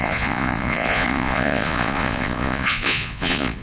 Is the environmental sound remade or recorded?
remade